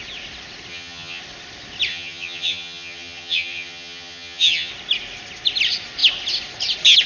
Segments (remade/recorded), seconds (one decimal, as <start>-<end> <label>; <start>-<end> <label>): 0.0-0.7 recorded; 0.7-1.2 remade; 1.2-1.9 recorded; 1.9-4.7 remade; 4.7-7.1 recorded